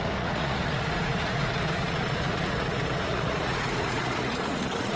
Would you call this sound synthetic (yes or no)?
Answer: yes